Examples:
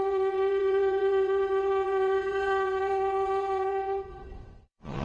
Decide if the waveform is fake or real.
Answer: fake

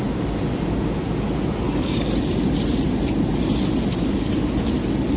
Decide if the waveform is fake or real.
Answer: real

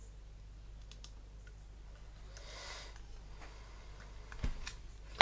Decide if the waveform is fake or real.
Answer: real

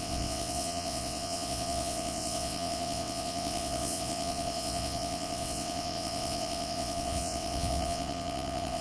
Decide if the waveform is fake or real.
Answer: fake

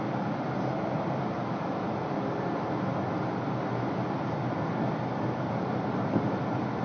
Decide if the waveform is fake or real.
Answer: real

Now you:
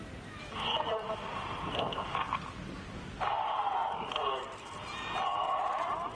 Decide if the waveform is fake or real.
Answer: real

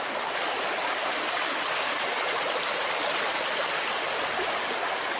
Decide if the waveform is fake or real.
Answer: real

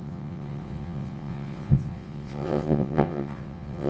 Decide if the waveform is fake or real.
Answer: fake